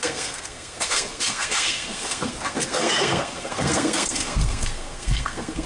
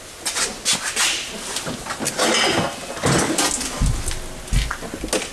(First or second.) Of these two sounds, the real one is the second